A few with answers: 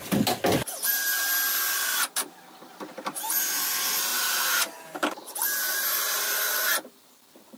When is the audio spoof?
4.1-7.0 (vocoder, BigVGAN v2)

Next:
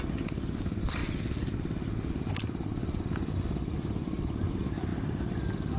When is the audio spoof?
none

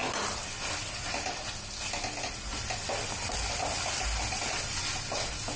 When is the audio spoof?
none

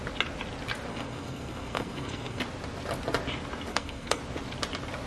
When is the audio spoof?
0.9-2.4 (codec, SNAC); 3.7-4.2

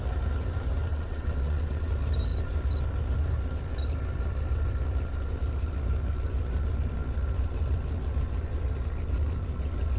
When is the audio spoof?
0.9-1.9 (vocoder, WaveNeXt)

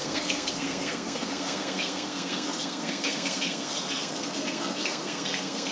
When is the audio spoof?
0.0-5.7 (codec, SNAC)

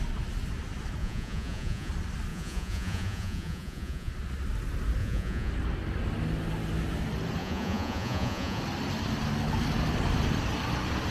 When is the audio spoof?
1.0-1.9 (vocoder, Vocos); 2.3-4.1; 5.0-5.5; 7.4-8.6

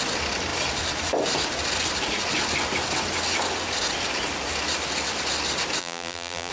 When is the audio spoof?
5.8-6.5 (vocoder, BigVGAN v2)